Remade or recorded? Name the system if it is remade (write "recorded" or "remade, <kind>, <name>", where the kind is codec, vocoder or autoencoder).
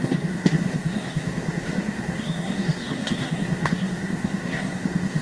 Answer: remade, codec, SNAC